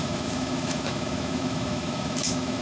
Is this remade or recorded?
remade